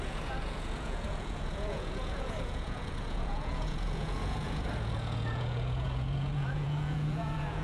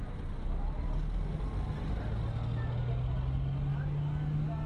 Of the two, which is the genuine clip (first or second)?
second